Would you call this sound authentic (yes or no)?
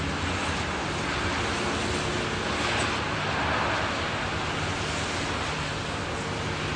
yes